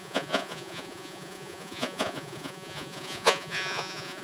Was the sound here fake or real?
fake